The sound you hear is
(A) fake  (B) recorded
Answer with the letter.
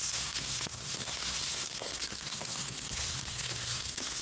A